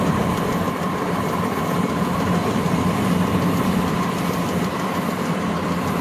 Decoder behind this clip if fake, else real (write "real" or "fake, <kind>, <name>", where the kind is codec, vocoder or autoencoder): fake, vocoder, BigVGAN v2